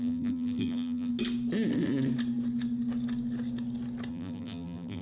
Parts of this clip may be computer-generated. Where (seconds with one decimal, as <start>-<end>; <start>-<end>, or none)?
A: 0.0-1.1; 4.1-5.0